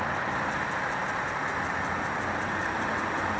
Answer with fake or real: real